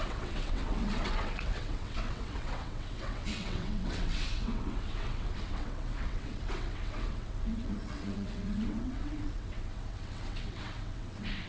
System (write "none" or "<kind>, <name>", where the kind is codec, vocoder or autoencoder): vocoder, WaveNeXt